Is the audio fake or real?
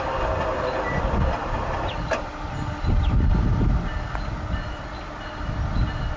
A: real